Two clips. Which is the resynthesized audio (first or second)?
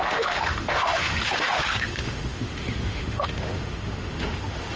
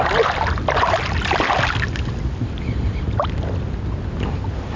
first